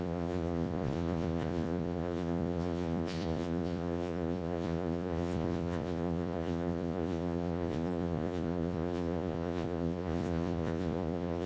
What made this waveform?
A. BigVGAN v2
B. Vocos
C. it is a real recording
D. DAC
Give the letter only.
B